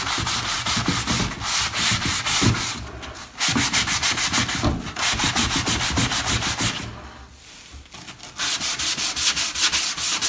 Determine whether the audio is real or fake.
real